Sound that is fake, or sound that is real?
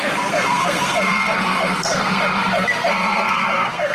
fake